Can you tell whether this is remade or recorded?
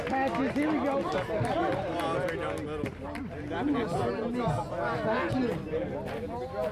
recorded